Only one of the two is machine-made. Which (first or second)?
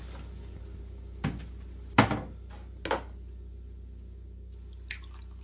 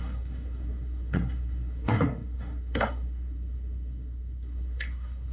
second